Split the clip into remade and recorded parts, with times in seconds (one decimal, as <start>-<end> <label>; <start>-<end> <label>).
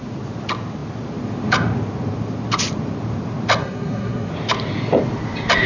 0.0-3.6 recorded; 3.6-4.3 remade; 4.3-5.7 recorded